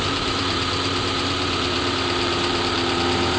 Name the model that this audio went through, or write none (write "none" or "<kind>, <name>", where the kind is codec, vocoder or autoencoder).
vocoder, BigVGAN v2